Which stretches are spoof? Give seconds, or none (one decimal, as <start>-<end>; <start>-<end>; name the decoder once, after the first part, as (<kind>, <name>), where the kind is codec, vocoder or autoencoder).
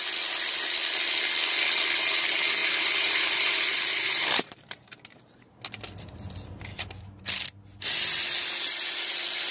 2.6-5.5 (vocoder, BigVGAN v2); 6.7-7.2